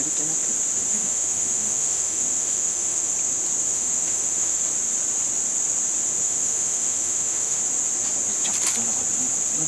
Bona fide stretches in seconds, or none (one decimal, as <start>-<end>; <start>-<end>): 0.0-0.9; 3.1-3.7; 4.6-6.2; 7.6-9.7